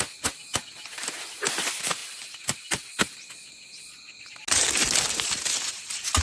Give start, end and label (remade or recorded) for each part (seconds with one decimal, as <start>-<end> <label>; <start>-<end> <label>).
0.0-6.2 recorded